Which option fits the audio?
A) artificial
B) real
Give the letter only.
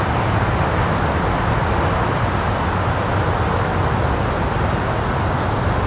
B